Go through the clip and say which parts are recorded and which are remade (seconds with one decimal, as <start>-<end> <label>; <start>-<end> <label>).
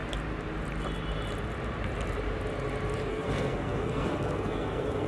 0.0-3.1 recorded; 3.1-5.1 remade